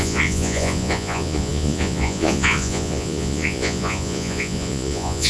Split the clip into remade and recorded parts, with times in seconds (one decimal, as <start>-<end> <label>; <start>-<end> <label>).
0.0-5.3 remade